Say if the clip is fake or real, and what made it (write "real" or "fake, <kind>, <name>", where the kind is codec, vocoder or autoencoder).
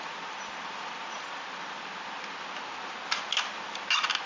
real